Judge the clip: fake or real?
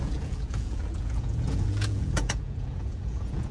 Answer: fake